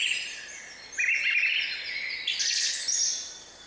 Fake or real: real